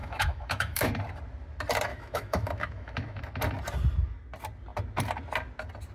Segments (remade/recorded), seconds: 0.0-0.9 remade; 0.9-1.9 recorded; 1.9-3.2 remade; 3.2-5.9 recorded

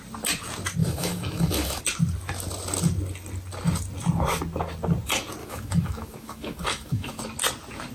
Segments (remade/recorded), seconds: 0.0-0.8 recorded; 0.8-1.8 remade; 1.8-5.4 recorded; 5.4-7.2 remade; 7.2-7.9 recorded

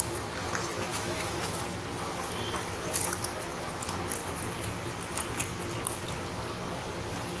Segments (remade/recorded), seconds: 0.0-0.9 recorded; 0.9-1.6 remade; 1.6-7.4 recorded

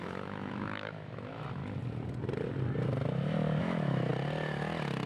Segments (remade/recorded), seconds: 0.0-1.6 remade; 1.6-3.6 recorded; 3.6-4.1 remade; 4.1-5.1 recorded

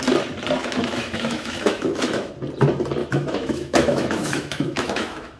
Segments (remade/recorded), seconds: 0.0-0.6 recorded; 0.6-2.3 remade; 2.3-3.0 recorded; 3.0-5.4 remade

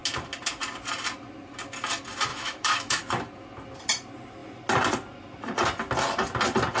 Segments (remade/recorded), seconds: 0.0-2.3 recorded; 2.3-3.1 remade; 3.1-6.8 recorded